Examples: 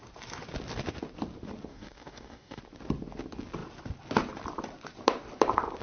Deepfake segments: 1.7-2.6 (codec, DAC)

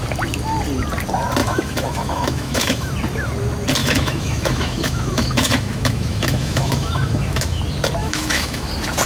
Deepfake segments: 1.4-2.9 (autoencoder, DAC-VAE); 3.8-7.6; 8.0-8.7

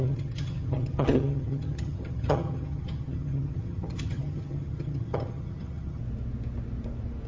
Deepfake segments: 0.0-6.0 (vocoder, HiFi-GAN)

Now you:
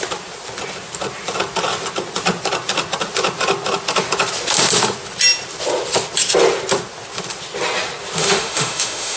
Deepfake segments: 8.2-9.2 (autoencoder, DAC-VAE)

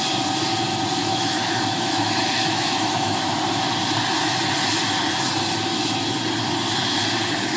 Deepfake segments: 1.0-3.4 (autoencoder, DAC-VAE)

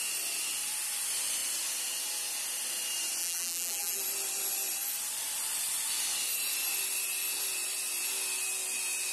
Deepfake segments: 3.2-4.0 (vocoder, BigVGAN v2)